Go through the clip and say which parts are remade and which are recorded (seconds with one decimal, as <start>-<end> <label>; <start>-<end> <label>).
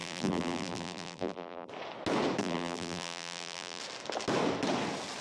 0.0-1.7 remade; 1.7-2.4 recorded; 2.4-3.8 remade; 3.8-5.2 recorded